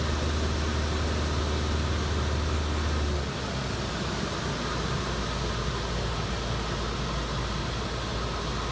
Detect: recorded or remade recorded